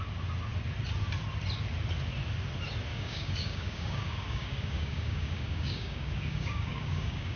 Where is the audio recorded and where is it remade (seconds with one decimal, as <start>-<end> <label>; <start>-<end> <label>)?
0.0-2.9 recorded; 2.9-7.4 remade